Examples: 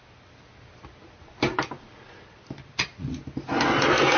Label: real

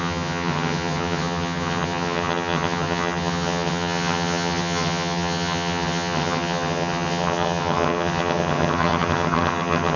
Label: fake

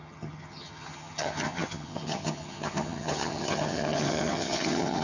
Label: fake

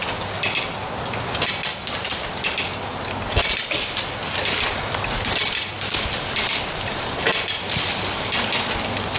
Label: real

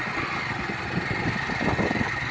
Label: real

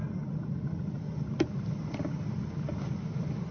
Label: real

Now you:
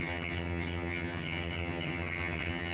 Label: fake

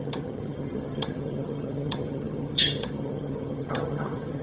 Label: fake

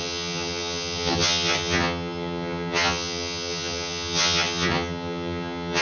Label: fake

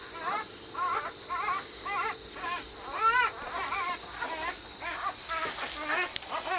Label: real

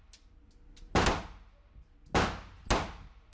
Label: real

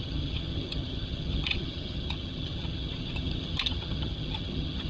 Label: fake